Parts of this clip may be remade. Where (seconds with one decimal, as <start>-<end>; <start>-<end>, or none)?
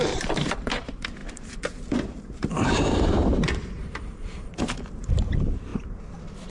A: 0.0-5.7